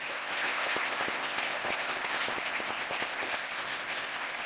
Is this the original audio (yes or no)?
no